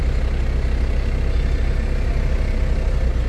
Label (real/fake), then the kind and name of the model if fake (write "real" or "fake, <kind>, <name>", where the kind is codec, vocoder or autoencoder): real